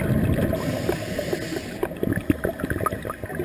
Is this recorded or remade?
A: recorded